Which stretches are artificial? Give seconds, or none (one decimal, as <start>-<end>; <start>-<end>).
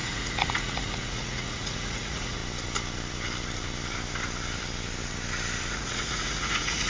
0.0-2.4; 5.7-6.9